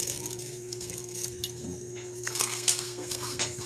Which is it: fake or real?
fake